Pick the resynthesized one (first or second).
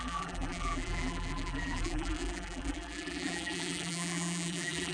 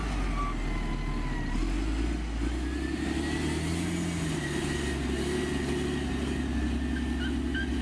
first